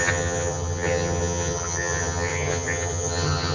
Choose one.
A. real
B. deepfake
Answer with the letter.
B